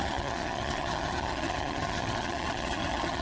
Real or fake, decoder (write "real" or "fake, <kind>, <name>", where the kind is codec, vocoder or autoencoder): fake, vocoder, HiFi-GAN